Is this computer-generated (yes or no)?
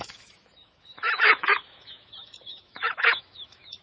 yes